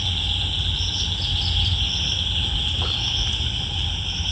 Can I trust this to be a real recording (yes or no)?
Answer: yes